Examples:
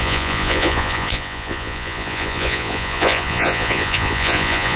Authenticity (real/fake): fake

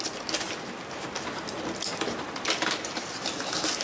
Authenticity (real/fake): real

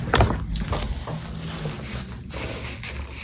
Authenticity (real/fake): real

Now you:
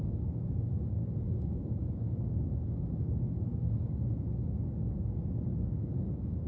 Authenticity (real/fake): fake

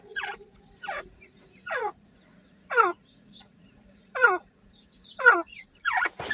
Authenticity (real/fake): fake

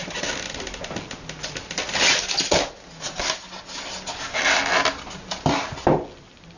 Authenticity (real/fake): real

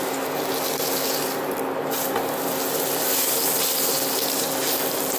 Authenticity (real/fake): real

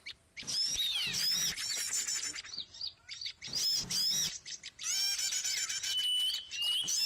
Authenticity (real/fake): fake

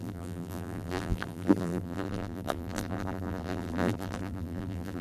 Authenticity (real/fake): fake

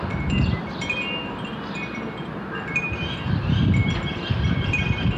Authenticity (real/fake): fake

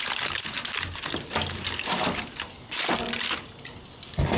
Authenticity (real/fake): real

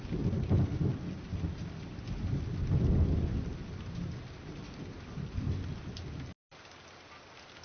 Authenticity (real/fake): real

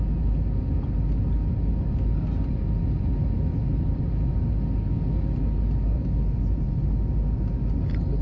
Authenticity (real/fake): real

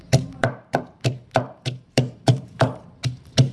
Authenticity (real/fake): fake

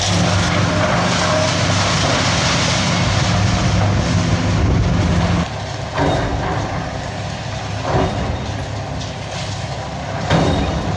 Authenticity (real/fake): real